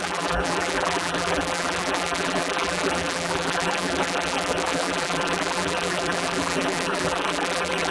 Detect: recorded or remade remade